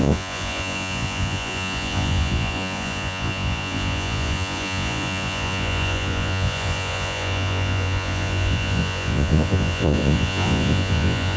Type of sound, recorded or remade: remade